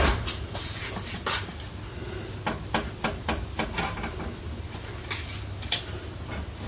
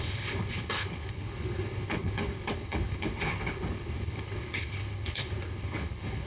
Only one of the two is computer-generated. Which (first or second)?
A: second